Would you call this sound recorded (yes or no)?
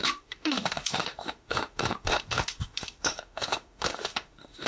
no